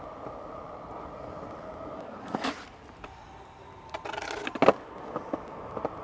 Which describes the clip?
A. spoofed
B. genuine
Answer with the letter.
B